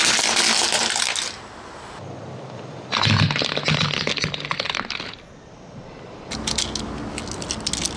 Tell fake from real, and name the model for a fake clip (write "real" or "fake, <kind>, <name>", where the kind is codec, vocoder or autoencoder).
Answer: real